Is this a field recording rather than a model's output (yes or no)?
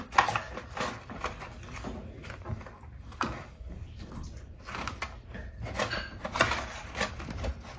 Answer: yes